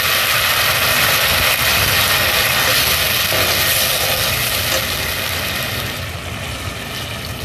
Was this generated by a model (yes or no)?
no